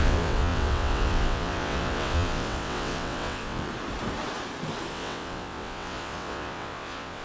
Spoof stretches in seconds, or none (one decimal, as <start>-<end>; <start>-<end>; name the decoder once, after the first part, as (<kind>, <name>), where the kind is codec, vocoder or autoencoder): 0.0-3.7 (vocoder, WaveNeXt); 4.9-7.2